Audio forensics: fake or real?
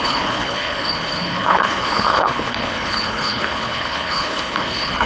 fake